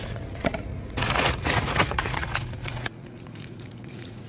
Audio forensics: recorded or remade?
remade